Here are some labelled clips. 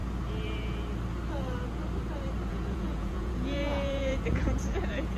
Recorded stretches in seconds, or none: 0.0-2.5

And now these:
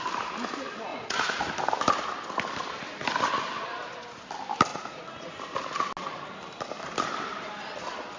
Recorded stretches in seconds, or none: 0.0-0.9; 1.4-4.7; 5.4-8.2

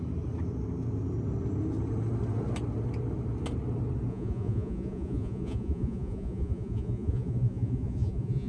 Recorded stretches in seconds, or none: 0.0-4.1

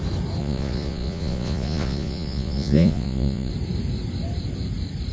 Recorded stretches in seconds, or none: 0.0-0.4; 3.5-5.1

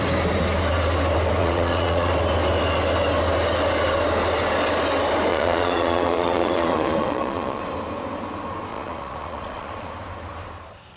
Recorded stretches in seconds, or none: 0.0-1.4; 2.1-5.3; 7.6-8.7; 9.9-11.0